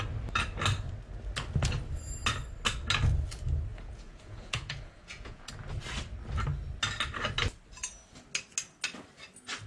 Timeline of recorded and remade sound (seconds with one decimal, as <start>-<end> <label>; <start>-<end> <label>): 0.0-3.7 recorded; 3.7-5.5 remade; 5.5-9.7 recorded